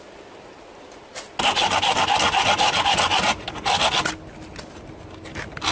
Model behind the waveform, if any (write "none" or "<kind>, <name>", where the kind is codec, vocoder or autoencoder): none